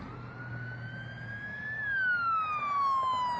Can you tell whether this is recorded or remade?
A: recorded